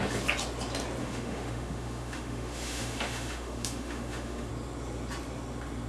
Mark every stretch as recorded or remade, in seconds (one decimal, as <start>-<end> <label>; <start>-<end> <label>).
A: 0.0-1.0 recorded; 1.0-4.5 remade; 4.5-5.9 recorded